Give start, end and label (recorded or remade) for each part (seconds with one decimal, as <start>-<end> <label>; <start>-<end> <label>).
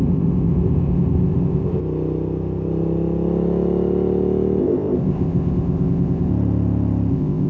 0.0-1.8 remade; 1.8-4.6 recorded; 4.6-6.3 remade; 6.3-7.1 recorded; 7.1-7.5 remade